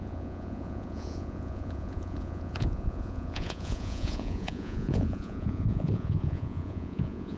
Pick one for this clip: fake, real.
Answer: fake